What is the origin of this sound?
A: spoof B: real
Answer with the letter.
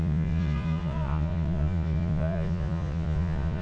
A